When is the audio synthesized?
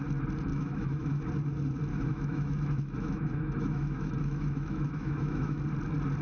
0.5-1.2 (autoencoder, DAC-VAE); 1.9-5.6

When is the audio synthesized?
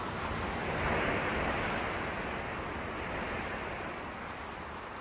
none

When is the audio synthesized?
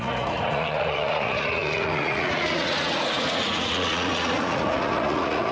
0.0-5.5 (vocoder, Vocos)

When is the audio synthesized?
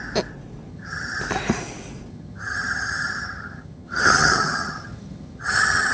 0.7-1.2 (vocoder, HiFi-GAN); 2.1-5.9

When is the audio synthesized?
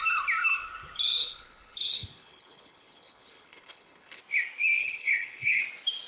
1.2-4.2 (codec, HILCodec); 4.8-5.6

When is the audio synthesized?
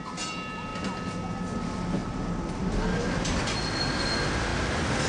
0.0-0.7 (vocoder, BigVGAN v2); 1.6-4.5